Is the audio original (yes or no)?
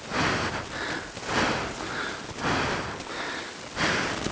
yes